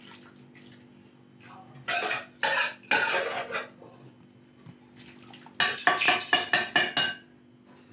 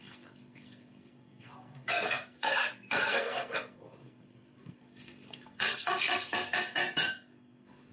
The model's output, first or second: second